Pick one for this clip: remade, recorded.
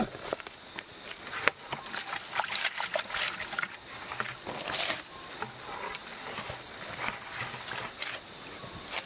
recorded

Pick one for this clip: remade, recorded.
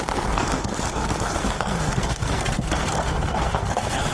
remade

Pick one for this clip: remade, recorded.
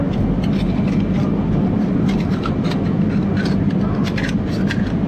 recorded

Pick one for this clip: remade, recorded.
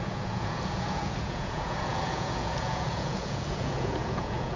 remade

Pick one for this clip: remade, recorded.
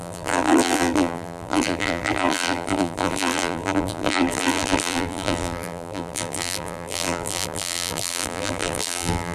remade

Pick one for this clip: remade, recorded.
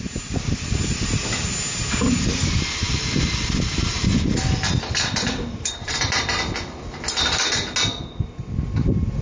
recorded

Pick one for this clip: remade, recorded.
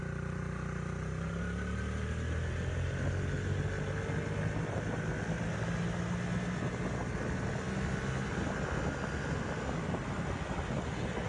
recorded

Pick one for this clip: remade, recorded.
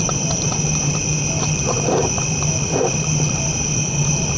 remade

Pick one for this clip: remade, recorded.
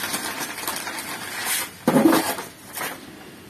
recorded